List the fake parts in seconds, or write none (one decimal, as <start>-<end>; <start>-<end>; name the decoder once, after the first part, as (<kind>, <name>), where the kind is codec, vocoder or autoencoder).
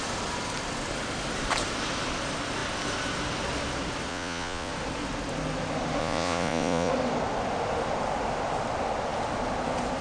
4.1-4.7 (vocoder, Vocos); 6.0-6.9